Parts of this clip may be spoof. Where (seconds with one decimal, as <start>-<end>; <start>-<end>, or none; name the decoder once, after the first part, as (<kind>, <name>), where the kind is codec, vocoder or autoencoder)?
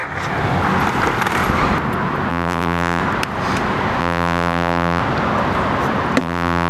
2.3-3.0 (vocoder, BigVGAN v2); 4.0-5.0; 6.2-6.7